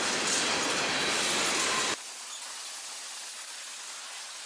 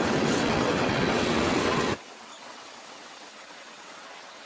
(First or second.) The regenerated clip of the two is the second